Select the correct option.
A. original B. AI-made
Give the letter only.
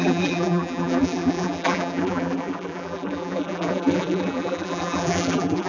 B